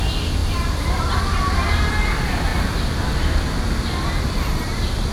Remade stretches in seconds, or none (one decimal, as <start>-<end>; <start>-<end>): 0.4-1.1